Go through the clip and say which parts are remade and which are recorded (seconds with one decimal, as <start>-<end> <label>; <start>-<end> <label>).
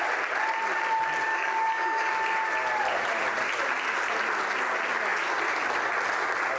0.0-1.3 recorded; 1.3-2.1 remade; 2.1-6.6 recorded